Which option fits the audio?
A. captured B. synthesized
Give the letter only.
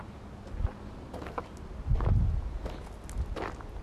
A